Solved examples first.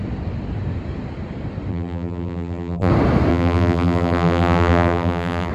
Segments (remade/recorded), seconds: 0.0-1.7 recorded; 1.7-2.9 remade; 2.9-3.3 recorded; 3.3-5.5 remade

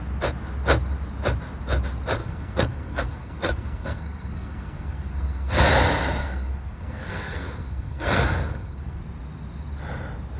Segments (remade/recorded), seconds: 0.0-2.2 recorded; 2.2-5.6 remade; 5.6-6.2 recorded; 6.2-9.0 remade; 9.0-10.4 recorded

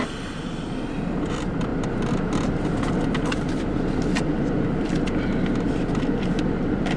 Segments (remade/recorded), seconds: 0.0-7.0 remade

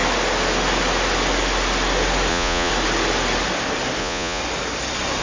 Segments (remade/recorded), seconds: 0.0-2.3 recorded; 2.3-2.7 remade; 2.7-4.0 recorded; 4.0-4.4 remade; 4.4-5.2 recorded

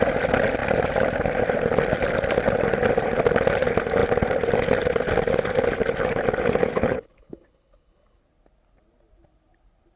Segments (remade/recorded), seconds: 0.0-6.6 recorded; 6.6-8.2 remade; 8.2-10.0 recorded